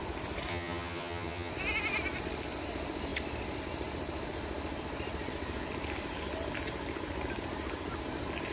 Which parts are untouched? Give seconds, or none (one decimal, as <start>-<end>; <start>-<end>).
0.0-0.5; 1.5-8.5